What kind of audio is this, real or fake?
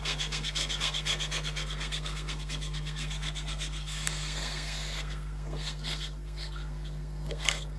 fake